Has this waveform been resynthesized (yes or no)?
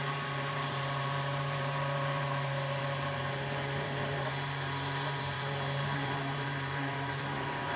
yes